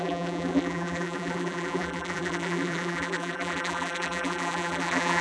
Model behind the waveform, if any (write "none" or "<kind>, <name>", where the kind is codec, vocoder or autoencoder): vocoder, BigVGAN v2